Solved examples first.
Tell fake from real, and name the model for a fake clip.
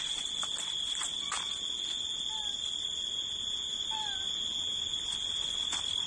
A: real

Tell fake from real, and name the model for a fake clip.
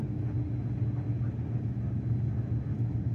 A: real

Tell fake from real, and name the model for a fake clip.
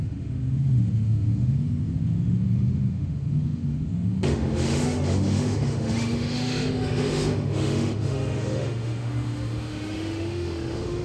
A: fake, autoencoder, DAC-VAE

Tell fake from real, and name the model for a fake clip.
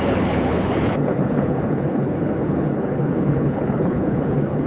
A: fake, codec, HILCodec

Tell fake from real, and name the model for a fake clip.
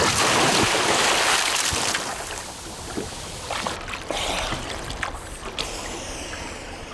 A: real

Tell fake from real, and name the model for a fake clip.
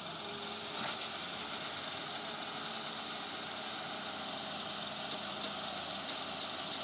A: real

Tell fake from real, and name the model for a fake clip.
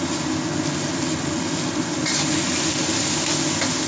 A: real